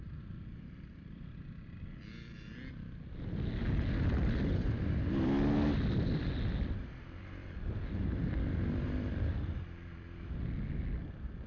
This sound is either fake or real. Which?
fake